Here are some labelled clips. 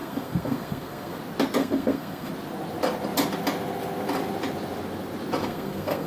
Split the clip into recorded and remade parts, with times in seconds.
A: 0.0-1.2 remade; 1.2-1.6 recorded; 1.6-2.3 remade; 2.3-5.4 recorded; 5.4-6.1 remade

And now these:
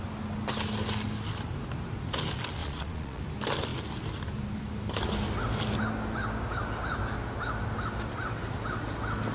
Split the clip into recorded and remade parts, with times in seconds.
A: 0.0-2.6 recorded; 2.6-3.2 remade; 3.2-9.3 recorded

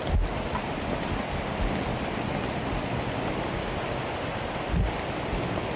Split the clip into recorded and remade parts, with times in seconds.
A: 0.0-5.8 recorded